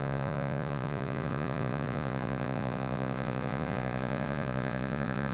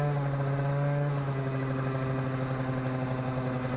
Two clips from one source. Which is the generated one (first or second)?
first